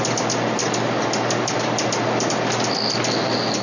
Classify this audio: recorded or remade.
recorded